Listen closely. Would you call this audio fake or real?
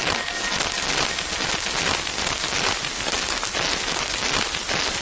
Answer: real